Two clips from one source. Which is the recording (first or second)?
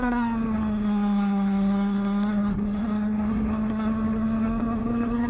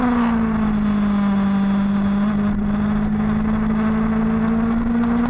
second